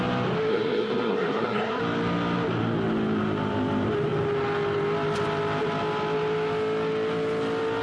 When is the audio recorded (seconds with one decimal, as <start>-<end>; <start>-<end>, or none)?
0.0-0.5; 1.8-7.8